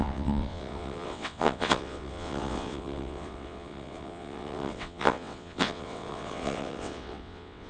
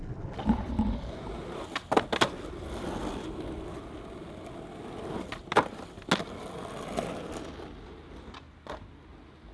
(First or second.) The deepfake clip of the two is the first